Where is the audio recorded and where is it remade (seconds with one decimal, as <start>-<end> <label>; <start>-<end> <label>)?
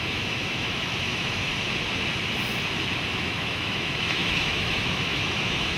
0.0-1.5 remade; 1.5-3.2 recorded; 3.2-5.8 remade